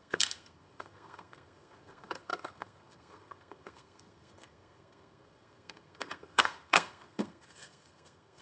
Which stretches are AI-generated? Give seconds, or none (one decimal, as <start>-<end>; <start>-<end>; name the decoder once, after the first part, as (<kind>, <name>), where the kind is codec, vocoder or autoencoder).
0.0-8.4 (codec, SNAC)